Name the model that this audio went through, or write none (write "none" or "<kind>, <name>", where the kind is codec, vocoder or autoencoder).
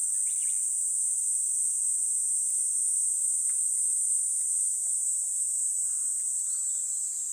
none